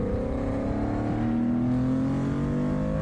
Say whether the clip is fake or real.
real